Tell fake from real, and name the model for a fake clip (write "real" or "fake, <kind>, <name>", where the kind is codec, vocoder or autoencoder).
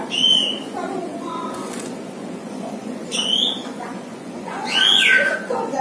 fake, vocoder, Vocos